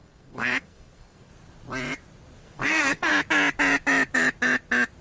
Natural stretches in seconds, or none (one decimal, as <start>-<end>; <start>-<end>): 1.3-2.4; 3.1-5.0